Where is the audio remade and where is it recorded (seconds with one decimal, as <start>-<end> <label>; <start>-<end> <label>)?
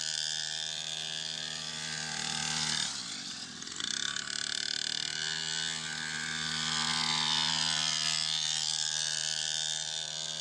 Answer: 0.0-10.4 recorded